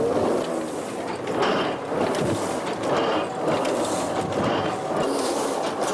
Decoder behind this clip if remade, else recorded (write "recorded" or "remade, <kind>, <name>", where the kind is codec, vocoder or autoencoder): recorded